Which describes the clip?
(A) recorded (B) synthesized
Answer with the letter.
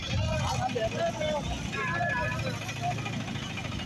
A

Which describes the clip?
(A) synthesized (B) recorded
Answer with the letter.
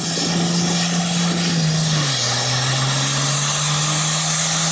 B